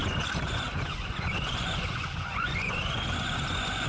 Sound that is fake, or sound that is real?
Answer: fake